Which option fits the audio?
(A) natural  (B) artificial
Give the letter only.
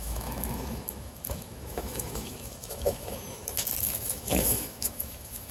B